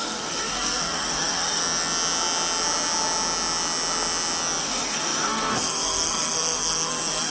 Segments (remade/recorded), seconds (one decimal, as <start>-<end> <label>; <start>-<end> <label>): 0.0-1.6 remade; 1.6-4.6 recorded; 4.6-7.3 remade